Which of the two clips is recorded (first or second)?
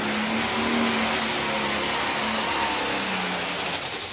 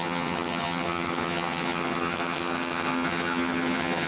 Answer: first